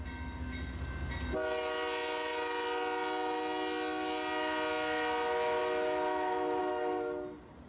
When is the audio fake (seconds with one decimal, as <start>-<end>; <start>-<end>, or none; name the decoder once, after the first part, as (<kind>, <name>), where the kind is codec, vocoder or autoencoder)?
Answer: none